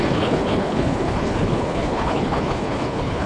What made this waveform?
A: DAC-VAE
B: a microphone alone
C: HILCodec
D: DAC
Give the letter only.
C